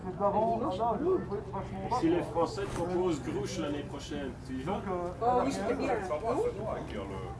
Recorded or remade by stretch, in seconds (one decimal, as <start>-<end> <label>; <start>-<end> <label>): 0.0-7.4 recorded